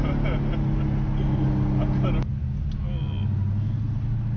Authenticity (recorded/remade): recorded